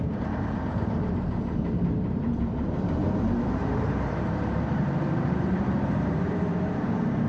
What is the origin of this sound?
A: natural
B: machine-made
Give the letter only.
B